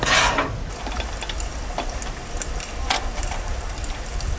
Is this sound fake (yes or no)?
no